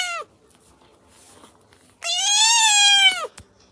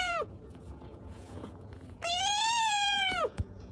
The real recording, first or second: first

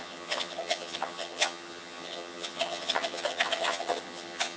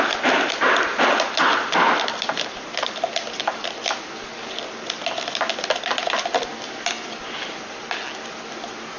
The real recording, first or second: second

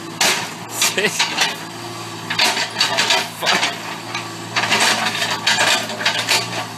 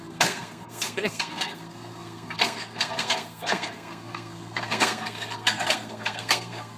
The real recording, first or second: first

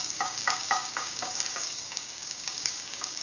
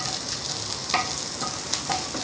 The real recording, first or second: second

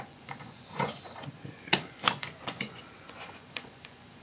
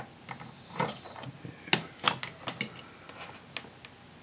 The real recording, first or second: second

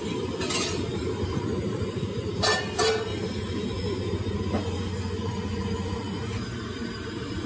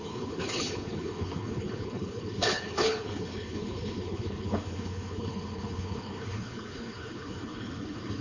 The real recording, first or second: first